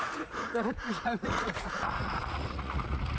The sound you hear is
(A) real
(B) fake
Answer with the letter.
B